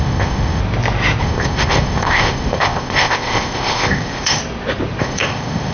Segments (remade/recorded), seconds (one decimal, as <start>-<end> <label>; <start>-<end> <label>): 0.0-0.6 remade; 0.6-1.2 recorded; 1.2-4.4 remade; 4.4-5.0 recorded; 5.0-5.7 remade